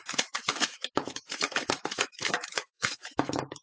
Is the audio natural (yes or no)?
no